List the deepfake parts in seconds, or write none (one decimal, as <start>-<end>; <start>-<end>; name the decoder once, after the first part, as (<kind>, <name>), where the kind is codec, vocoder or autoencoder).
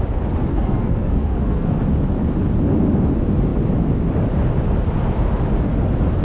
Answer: 0.5-1.8 (codec, SNAC)